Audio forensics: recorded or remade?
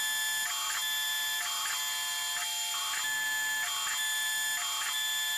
recorded